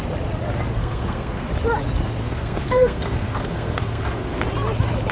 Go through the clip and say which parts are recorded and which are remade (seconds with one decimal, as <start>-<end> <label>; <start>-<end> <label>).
0.0-0.8 recorded; 0.8-1.5 remade; 1.5-2.2 recorded; 2.2-4.4 remade; 4.4-5.1 recorded